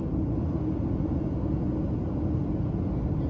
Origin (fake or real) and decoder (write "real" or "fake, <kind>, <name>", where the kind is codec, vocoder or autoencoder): real